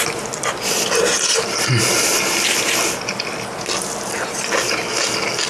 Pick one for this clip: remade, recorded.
recorded